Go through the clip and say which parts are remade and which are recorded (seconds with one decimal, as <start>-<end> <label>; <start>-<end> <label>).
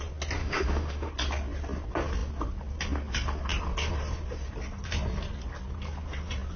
0.0-0.4 recorded; 0.4-1.1 remade; 1.1-6.6 recorded